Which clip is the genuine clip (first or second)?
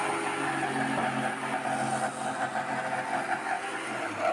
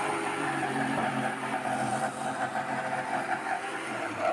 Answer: first